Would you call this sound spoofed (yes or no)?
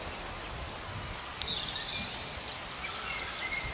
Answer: no